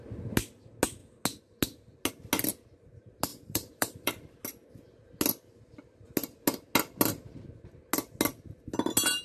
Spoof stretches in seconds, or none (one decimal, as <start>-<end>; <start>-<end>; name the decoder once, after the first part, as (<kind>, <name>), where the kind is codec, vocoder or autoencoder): 3.3-4.1 (vocoder, BigVGAN v2)